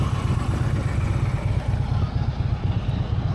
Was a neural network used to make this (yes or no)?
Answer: no